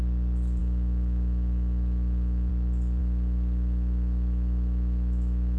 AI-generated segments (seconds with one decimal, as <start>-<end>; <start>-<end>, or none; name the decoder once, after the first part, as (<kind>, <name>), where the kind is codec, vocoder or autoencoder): 0.6-2.5 (autoencoder, DAC-VAE); 3.0-5.6